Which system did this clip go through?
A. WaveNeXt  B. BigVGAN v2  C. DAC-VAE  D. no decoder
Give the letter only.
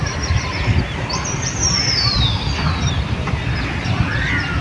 D